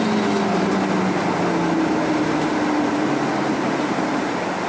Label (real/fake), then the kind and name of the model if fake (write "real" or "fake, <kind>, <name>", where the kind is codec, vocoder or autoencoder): real